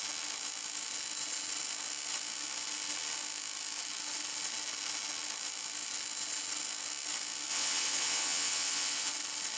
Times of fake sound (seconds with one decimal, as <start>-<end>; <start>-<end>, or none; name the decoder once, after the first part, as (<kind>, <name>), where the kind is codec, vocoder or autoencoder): 7.5-9.1 (vocoder, WaveNeXt)